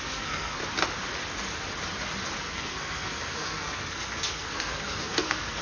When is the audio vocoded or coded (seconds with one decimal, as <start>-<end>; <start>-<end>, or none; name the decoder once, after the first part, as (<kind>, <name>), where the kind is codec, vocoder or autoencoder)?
0.0-0.6 (codec, SNAC); 2.4-5.6